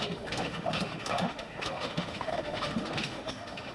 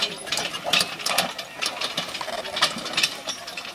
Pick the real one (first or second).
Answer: second